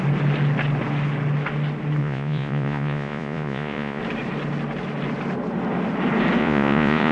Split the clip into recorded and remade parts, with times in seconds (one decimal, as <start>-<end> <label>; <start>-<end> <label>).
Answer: 0.0-2.0 recorded; 2.0-4.0 remade; 4.0-6.4 recorded; 6.4-7.1 remade